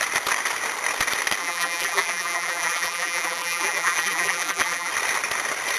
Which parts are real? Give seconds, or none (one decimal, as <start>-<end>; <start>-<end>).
0.0-1.4; 4.9-5.8